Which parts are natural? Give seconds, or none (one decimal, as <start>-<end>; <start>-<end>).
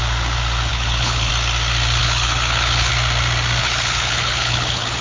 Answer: 0.0-0.7; 1.3-2.0; 2.9-3.6